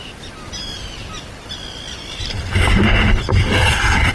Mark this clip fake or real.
fake